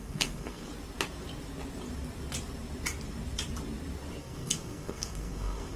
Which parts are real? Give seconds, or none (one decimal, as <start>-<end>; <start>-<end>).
0.7-4.2